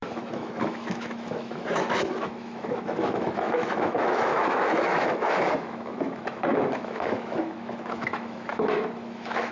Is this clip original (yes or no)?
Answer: no